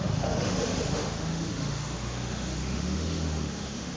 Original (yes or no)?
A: no